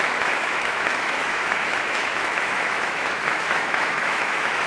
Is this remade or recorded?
remade